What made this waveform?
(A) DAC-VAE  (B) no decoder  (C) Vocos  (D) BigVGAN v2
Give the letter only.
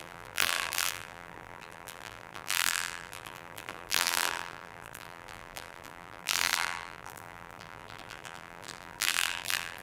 D